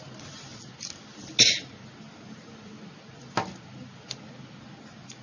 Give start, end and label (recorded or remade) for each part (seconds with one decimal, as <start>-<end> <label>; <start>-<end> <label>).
0.0-5.2 recorded